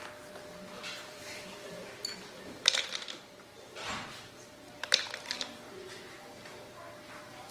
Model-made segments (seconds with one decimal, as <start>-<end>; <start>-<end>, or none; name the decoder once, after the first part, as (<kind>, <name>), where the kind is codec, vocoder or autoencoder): 0.9-5.4 (vocoder, BigVGAN v2)